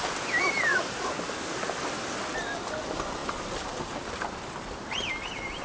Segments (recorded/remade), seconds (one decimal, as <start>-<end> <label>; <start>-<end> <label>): 0.0-0.7 recorded; 0.7-1.8 remade; 1.8-5.6 recorded